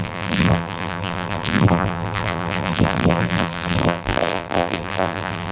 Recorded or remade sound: remade